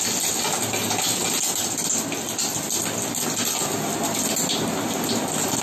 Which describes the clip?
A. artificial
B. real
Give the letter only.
B